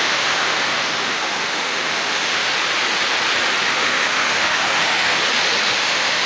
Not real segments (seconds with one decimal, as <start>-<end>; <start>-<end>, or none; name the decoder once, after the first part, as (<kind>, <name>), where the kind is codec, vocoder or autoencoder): 0.0-2.5 (autoencoder, DAC-VAE); 3.6-5.2; 5.8-6.3